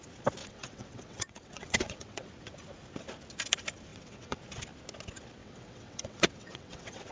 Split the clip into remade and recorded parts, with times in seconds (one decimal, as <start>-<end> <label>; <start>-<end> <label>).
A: 0.0-0.4 recorded; 0.4-2.3 remade; 2.3-3.9 recorded; 3.9-4.4 remade; 4.4-5.4 recorded; 5.4-7.1 remade

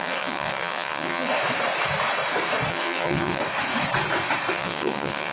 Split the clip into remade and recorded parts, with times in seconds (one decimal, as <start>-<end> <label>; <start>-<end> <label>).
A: 0.0-1.3 remade; 1.3-2.7 recorded; 2.7-3.4 remade; 3.4-4.5 recorded; 4.5-5.3 remade

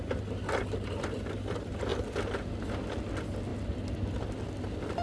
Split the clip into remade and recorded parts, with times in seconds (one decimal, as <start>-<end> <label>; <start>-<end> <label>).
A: 0.0-5.0 recorded

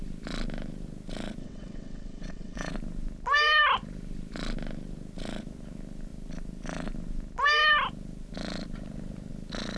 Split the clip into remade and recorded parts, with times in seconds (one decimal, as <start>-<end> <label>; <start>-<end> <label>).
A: 0.0-1.4 recorded; 1.4-2.7 remade; 2.7-9.8 recorded